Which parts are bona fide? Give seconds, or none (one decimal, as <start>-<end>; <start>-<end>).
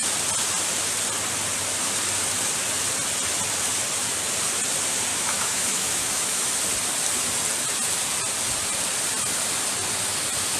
0.0-5.1; 6.5-10.6